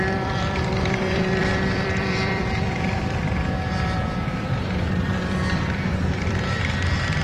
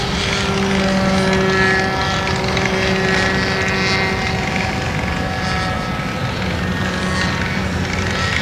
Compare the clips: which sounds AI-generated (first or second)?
first